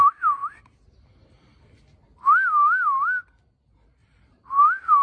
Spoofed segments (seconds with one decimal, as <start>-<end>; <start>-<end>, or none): none